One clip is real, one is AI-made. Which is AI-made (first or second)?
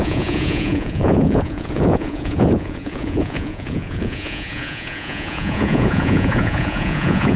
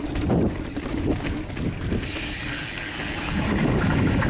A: first